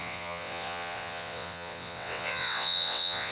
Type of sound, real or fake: fake